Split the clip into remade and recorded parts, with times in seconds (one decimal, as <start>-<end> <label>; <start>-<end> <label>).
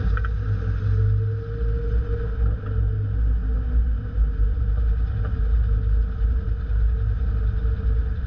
0.0-3.4 recorded; 3.4-4.6 remade; 4.6-8.3 recorded